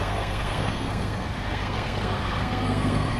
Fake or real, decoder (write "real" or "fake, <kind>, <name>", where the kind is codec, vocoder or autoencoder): fake, codec, SNAC